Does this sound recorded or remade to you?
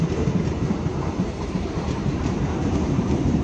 remade